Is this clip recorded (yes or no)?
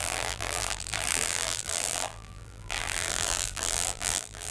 no